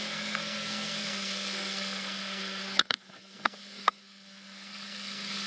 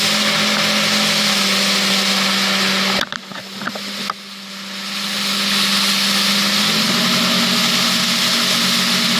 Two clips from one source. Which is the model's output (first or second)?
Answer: first